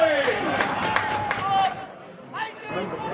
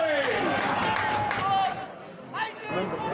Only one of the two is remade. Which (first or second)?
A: first